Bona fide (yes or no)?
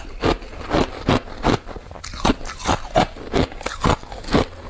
yes